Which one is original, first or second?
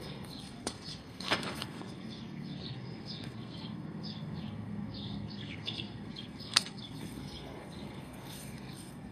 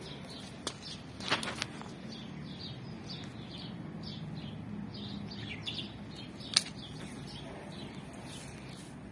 second